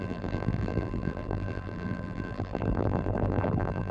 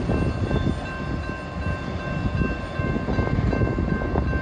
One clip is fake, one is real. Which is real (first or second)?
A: second